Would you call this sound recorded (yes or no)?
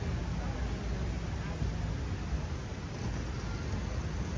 yes